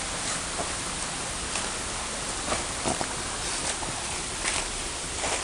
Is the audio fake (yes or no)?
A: no